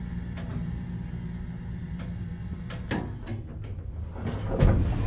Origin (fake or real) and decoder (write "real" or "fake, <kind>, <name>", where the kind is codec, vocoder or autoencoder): real